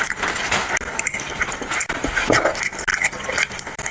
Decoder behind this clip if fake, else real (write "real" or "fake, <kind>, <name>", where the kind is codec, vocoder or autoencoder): real